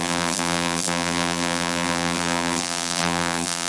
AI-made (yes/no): yes